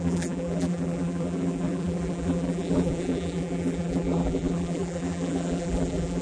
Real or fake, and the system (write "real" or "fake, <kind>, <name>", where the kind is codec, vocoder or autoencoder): fake, vocoder, BigVGAN v2